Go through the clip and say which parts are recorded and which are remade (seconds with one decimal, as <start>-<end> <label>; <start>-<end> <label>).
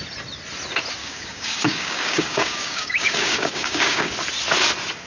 0.0-1.0 recorded; 1.0-4.1 remade; 4.1-5.1 recorded